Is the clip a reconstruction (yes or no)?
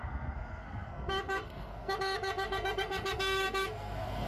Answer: yes